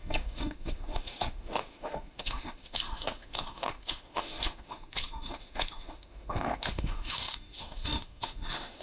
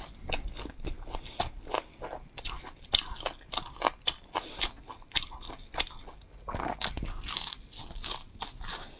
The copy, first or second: first